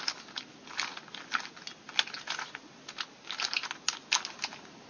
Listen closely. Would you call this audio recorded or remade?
recorded